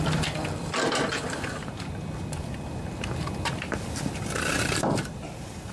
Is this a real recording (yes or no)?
no